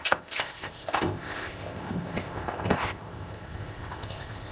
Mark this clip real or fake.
fake